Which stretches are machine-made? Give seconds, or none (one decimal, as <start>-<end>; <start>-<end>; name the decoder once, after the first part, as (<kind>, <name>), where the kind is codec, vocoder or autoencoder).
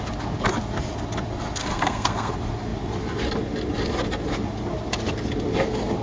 1.6-2.3 (codec, SNAC)